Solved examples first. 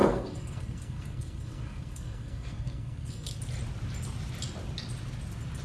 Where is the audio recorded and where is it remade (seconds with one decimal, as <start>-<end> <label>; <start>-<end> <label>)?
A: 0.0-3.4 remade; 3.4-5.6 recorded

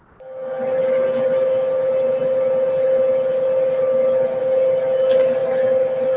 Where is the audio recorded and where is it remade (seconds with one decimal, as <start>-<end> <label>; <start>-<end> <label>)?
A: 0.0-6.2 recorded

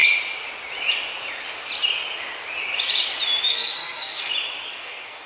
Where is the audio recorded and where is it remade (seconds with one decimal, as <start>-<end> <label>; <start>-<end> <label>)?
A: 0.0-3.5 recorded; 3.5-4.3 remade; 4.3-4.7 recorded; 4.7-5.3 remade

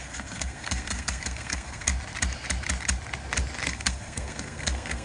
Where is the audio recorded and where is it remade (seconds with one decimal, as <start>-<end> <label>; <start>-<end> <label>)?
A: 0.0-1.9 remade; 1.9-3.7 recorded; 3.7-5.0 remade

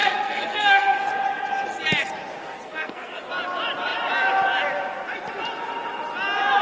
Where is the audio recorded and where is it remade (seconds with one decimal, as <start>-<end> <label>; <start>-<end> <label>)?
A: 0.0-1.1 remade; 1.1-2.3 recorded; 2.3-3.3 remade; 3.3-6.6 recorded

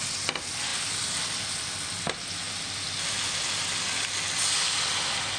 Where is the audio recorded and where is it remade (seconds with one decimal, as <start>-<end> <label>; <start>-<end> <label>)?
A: 0.0-5.4 recorded

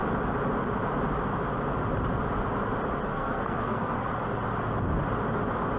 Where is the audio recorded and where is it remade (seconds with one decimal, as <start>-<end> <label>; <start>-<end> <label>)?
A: 0.0-3.1 recorded; 3.1-4.1 remade; 4.1-5.8 recorded

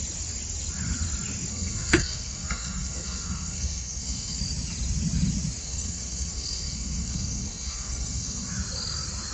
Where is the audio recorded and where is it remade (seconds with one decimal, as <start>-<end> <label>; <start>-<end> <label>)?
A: 0.0-1.5 recorded; 1.5-4.4 remade; 4.4-5.6 recorded; 5.6-8.5 remade; 8.5-9.3 recorded